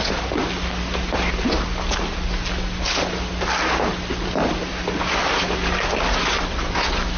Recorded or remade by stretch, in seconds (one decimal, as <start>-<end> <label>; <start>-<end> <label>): 0.0-7.2 recorded